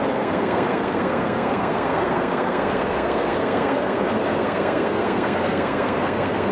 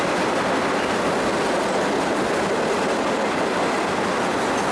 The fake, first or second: first